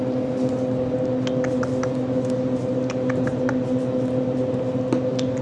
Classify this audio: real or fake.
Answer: real